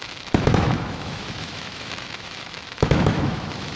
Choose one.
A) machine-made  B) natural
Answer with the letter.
A